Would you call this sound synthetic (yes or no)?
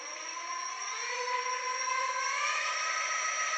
no